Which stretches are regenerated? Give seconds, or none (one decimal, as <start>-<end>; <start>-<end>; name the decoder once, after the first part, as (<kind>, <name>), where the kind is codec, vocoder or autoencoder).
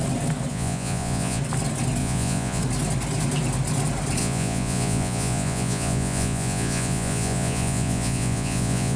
0.5-1.4 (vocoder, Vocos); 2.0-2.6; 4.2-9.0